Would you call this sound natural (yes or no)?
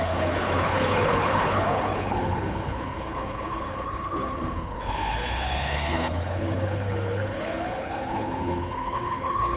no